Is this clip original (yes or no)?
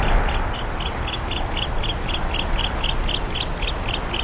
yes